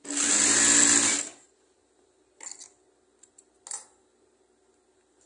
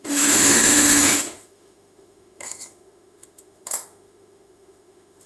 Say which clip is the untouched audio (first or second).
first